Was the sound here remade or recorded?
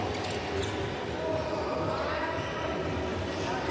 recorded